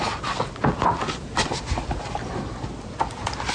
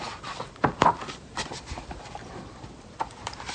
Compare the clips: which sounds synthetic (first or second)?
second